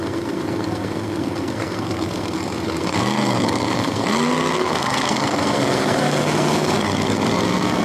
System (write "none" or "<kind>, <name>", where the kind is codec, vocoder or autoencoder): codec, SNAC